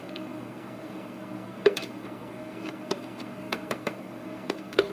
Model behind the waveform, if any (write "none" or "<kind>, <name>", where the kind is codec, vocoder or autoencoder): codec, SNAC